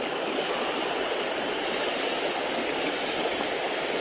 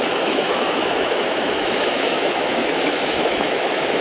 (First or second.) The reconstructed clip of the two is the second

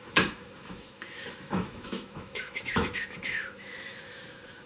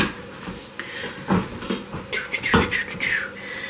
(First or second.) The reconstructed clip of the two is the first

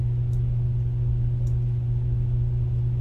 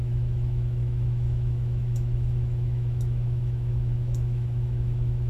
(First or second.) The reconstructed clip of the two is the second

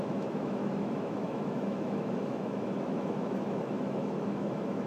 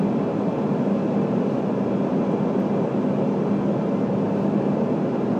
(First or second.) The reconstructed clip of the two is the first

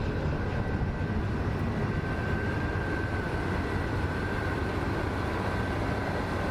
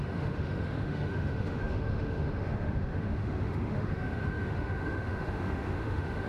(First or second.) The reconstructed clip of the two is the second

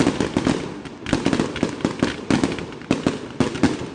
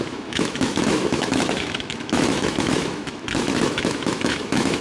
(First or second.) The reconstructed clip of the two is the second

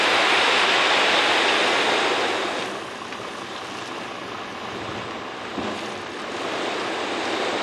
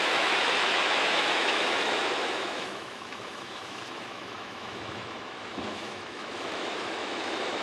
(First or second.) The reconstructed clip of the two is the second